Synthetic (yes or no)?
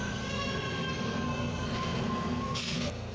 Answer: yes